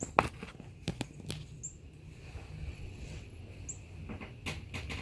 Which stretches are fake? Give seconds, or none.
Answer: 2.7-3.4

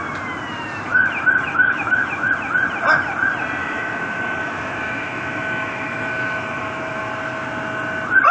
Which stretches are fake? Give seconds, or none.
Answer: 0.9-2.3; 3.6-7.0

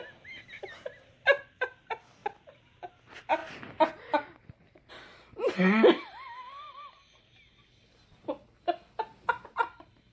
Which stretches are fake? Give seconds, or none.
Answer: none

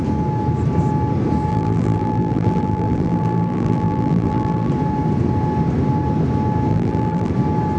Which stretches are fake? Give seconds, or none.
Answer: 1.5-4.7; 6.7-7.3

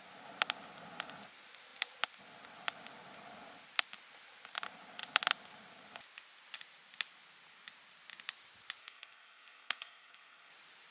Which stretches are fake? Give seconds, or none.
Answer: 8.8-10.5

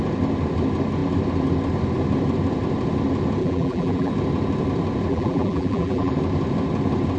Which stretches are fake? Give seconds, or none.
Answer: 3.4-4.1; 5.1-6.1

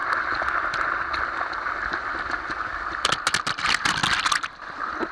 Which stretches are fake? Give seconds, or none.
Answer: 0.0-0.6

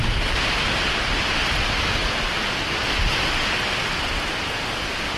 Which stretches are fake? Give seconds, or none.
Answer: none